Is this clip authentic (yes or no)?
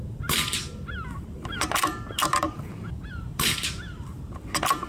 no